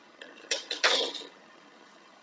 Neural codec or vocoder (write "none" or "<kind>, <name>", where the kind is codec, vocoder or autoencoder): vocoder, HiFi-GAN